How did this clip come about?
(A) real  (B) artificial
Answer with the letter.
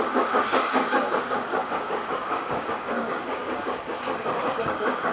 B